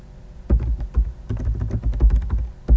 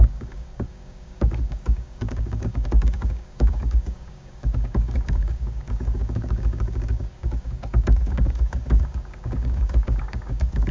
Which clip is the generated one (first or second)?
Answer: second